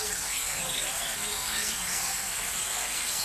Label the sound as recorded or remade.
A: remade